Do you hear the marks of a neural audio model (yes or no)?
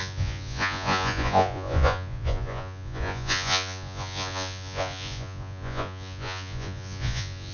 yes